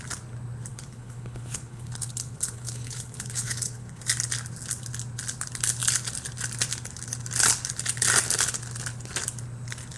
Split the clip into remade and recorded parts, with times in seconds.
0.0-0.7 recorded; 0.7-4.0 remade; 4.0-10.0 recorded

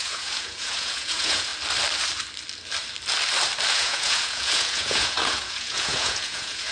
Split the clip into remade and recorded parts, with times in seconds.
0.0-1.5 remade; 1.5-3.7 recorded; 3.7-6.7 remade

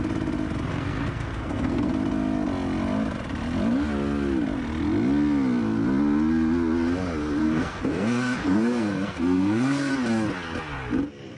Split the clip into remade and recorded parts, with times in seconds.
0.0-0.7 recorded; 0.7-1.9 remade; 1.9-7.4 recorded; 7.4-9.9 remade; 9.9-11.4 recorded

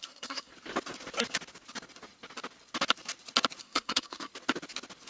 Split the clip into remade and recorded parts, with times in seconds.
0.0-0.5 remade; 0.5-3.6 recorded; 3.6-4.3 remade; 4.3-5.1 recorded

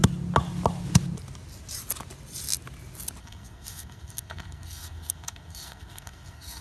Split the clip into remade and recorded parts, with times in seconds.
0.0-3.2 recorded; 3.2-6.6 remade

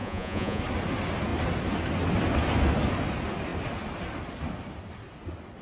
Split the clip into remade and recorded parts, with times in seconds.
0.0-0.6 remade; 0.6-5.6 recorded

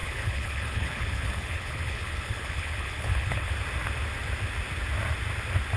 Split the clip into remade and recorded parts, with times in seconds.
0.0-3.5 remade; 3.5-5.8 recorded

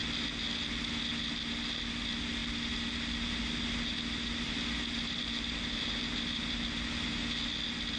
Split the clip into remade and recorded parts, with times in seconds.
0.0-8.0 recorded